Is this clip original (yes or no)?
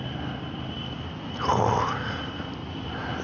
yes